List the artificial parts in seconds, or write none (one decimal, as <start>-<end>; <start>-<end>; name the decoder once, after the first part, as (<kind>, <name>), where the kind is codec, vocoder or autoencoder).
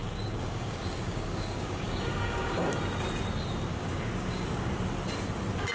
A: 0.0-2.7 (codec, DAC); 3.7-4.7